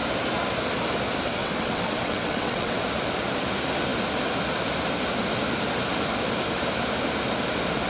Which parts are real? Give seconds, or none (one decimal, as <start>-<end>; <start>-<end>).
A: 0.0-1.4; 2.8-7.9